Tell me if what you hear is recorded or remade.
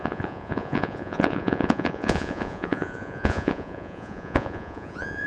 remade